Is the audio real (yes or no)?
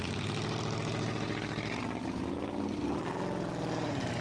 yes